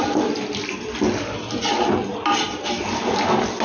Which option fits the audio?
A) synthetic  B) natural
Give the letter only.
B